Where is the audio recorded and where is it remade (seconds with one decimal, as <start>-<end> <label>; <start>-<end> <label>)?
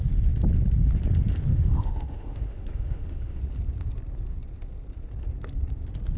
0.0-1.5 recorded; 1.5-3.4 remade; 3.4-6.2 recorded